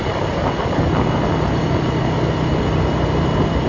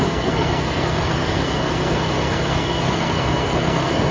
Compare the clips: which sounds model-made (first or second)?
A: second